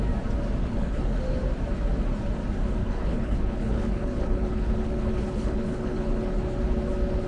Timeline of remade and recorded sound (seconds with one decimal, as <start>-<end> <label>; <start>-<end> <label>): 0.0-0.6 recorded; 0.6-1.2 remade; 1.2-2.8 recorded; 2.8-6.4 remade; 6.4-7.3 recorded